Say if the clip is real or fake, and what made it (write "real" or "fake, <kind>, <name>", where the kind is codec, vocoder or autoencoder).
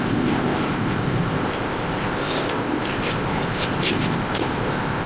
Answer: fake, codec, ZipCodec